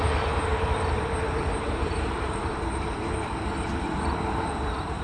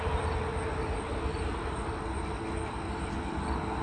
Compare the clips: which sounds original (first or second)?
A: second